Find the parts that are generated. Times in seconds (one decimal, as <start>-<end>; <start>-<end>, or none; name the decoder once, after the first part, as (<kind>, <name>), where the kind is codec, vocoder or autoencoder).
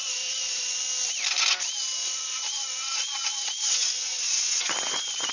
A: 0.0-0.6 (vocoder, Vocos); 2.0-5.3